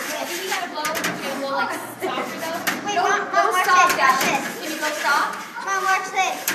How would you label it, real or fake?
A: fake